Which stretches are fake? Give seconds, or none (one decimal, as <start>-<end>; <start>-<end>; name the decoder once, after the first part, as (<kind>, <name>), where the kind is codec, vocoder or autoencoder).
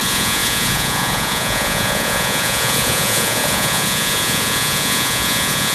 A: 0.0-5.7 (vocoder, Vocos)